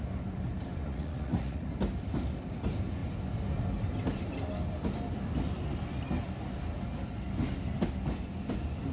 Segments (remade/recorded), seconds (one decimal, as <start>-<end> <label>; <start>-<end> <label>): 0.0-0.8 recorded; 0.8-1.7 remade; 1.7-8.9 recorded